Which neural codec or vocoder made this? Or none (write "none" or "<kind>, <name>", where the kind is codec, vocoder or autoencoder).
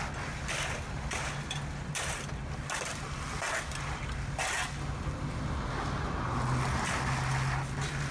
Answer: none